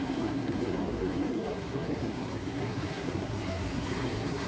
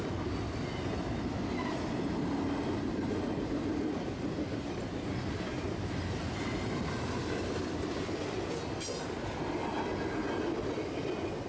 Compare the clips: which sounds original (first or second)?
second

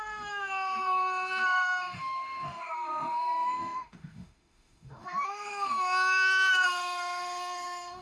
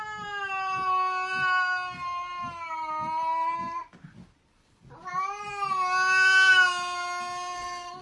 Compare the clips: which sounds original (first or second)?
second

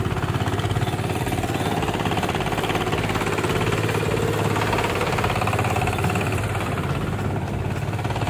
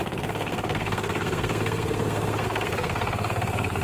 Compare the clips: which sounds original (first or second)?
first